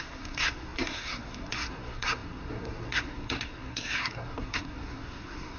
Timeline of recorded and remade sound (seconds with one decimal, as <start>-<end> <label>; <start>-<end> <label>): 0.0-5.6 remade